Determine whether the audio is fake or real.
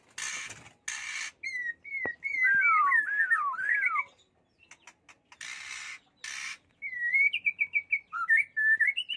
real